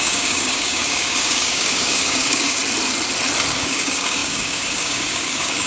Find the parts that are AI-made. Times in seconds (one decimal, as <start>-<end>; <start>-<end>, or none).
0.0-2.6; 3.5-5.7